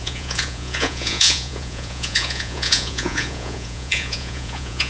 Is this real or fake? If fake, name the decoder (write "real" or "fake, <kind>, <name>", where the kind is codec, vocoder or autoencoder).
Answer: fake, vocoder, Vocos